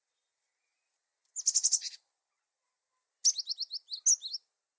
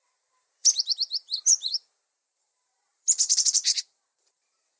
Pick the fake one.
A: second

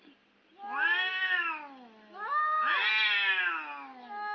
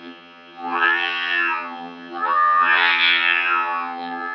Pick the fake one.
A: second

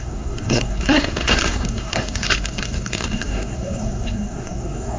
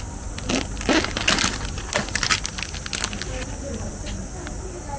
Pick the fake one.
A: first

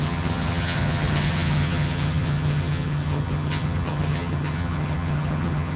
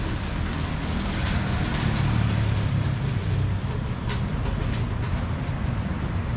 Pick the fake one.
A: first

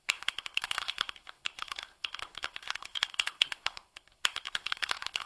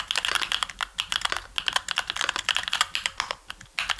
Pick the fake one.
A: first